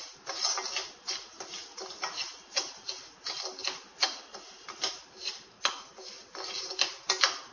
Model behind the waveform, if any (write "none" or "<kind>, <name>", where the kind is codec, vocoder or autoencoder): none